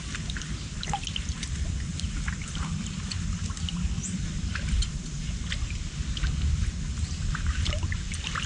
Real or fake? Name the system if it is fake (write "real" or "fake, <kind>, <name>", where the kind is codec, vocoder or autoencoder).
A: real